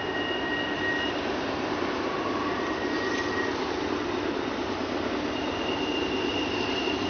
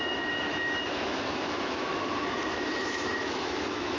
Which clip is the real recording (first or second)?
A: first